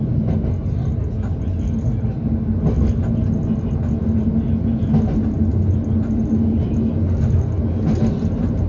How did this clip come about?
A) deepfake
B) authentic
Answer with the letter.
B